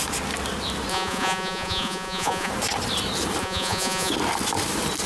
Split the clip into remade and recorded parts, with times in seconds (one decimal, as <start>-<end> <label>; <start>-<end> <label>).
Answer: 0.0-0.9 recorded; 0.9-2.5 remade; 2.5-3.4 recorded; 3.4-4.1 remade; 4.1-5.1 recorded